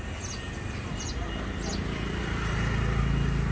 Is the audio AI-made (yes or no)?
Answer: no